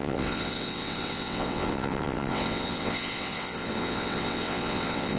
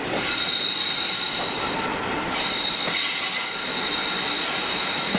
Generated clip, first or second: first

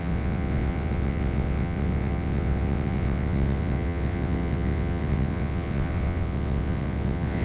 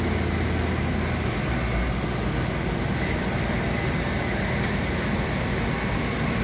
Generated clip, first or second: first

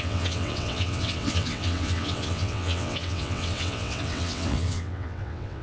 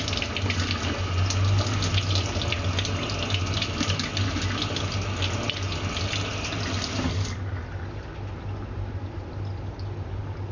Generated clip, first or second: first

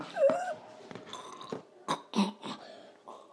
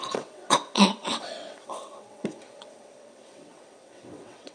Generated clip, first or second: second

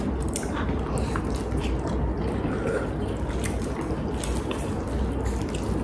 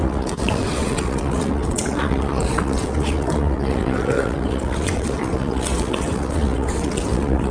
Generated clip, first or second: second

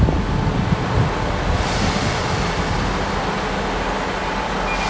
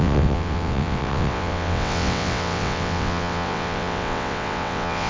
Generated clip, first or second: second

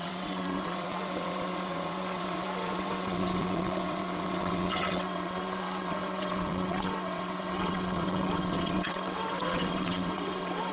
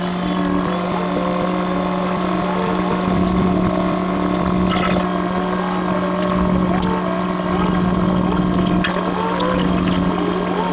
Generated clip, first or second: first